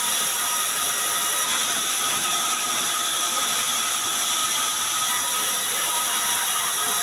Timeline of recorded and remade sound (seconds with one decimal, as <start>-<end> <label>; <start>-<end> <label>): 0.0-1.6 recorded; 1.6-3.6 remade; 3.6-4.4 recorded; 4.4-6.2 remade; 6.2-7.0 recorded